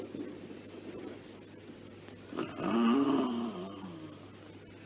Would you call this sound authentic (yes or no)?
yes